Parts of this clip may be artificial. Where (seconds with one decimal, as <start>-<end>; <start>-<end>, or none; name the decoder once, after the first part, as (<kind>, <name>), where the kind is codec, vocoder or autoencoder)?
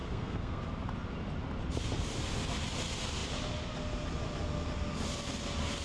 0.0-0.6 (codec, SNAC)